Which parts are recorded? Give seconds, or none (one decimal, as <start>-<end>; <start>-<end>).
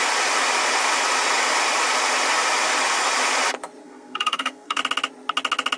0.0-3.8; 4.8-5.8